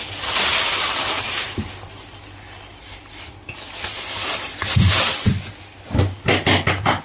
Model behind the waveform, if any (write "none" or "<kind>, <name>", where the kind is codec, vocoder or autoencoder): none